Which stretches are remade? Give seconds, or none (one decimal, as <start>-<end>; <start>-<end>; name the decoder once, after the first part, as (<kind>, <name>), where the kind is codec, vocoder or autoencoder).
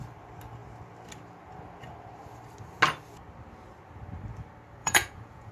4.8-5.5 (vocoder, Vocos)